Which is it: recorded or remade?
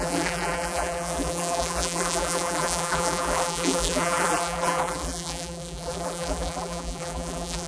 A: remade